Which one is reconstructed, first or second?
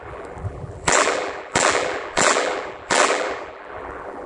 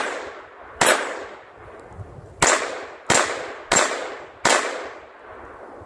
first